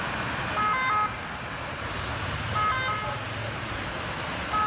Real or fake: real